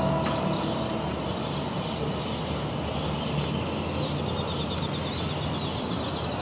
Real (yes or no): yes